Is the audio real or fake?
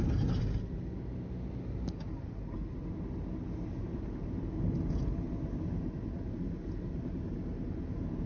real